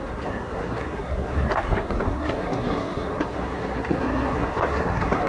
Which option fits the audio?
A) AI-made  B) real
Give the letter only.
A